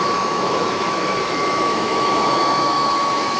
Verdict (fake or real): fake